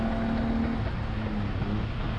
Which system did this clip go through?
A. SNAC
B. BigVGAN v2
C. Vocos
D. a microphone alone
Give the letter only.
D